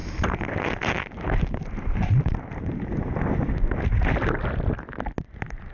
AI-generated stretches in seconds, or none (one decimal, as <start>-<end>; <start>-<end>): 0.0-3.1